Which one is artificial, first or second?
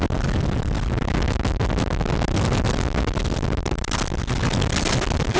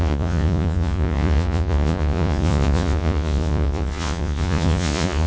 second